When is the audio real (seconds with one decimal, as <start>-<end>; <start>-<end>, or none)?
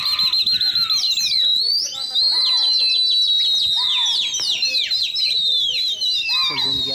0.0-6.9